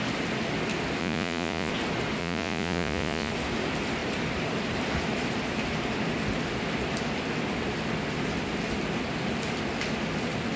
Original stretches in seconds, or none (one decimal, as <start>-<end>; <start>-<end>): 0.0-1.0; 1.7-2.2; 3.3-10.6